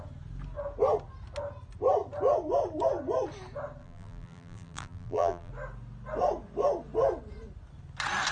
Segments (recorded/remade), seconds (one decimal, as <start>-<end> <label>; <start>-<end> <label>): 0.0-3.8 recorded; 3.8-5.5 remade; 5.5-8.3 recorded